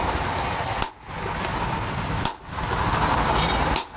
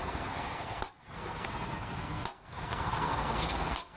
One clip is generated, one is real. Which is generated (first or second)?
second